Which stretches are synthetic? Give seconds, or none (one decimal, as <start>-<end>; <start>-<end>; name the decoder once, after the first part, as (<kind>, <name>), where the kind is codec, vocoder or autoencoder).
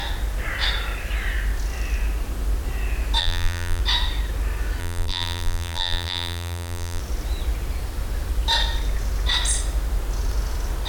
3.2-3.8 (vocoder, BigVGAN v2); 4.8-7.0